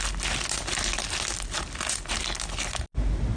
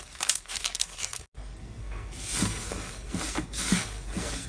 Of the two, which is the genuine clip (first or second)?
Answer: first